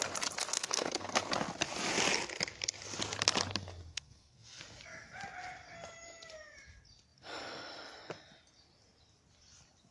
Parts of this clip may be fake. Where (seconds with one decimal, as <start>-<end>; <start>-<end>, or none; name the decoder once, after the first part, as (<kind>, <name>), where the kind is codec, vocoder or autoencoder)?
0.5-1.3 (codec, SNAC); 3.9-4.6